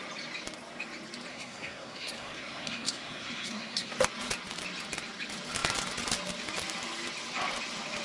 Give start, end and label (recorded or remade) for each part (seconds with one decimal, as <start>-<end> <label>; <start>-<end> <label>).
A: 0.0-1.3 recorded; 1.3-3.9 remade; 3.9-8.0 recorded